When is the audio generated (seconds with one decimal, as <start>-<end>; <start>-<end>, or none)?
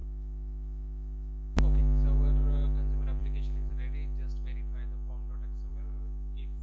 0.0-1.8; 3.2-3.7; 5.7-6.6